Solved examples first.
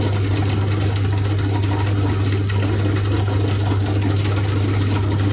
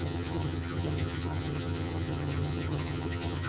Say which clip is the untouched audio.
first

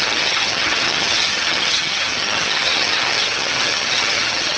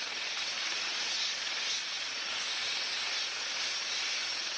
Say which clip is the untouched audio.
second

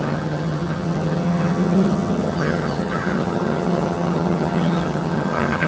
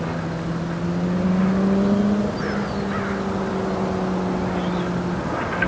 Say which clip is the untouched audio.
second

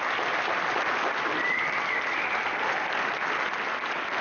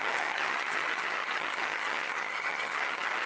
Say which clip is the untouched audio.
first